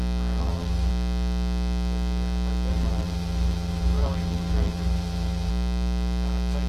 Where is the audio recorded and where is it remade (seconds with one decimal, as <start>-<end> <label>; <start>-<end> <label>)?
0.0-0.4 recorded; 0.4-0.9 remade; 0.9-2.7 recorded; 2.7-5.5 remade; 5.5-6.7 recorded